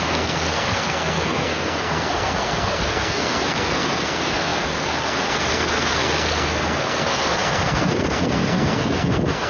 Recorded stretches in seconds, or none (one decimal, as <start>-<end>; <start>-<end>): none